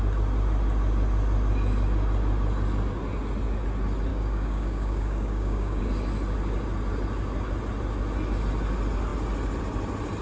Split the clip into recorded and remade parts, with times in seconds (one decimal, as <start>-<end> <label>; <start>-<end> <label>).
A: 0.0-4.1 recorded; 4.1-5.8 remade; 5.8-10.2 recorded